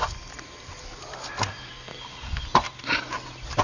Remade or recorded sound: recorded